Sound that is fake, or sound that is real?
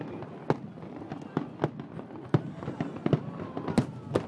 real